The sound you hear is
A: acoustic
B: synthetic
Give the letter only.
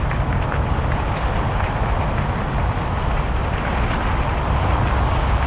A